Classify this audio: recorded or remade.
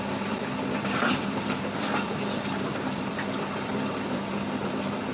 remade